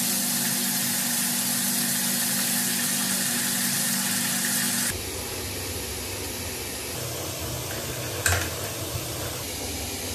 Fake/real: real